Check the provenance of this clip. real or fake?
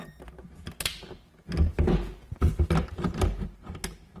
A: real